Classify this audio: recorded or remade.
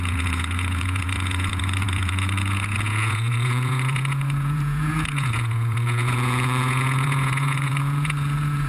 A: remade